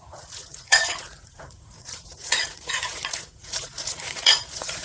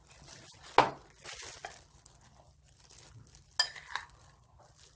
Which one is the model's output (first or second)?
first